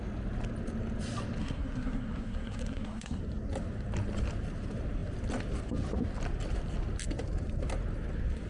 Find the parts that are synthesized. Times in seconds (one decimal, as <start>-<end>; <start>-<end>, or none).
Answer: 1.4-3.2